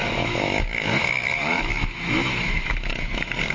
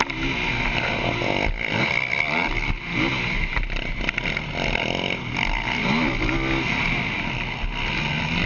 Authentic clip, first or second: second